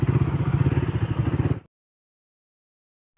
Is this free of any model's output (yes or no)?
yes